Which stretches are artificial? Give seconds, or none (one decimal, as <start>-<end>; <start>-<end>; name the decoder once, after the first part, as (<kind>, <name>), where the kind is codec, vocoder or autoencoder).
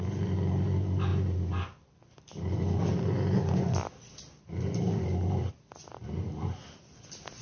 0.0-7.4 (vocoder, BigVGAN v2)